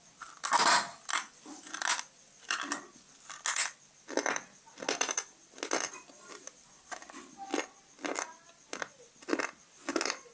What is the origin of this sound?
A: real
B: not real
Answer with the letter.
A